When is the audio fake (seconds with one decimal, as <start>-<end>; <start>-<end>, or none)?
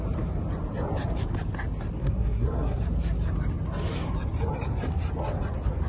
2.0-2.8